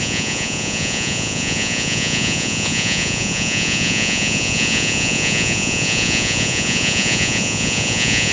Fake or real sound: fake